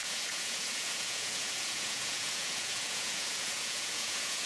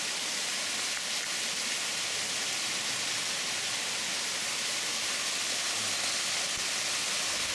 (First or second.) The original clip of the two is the second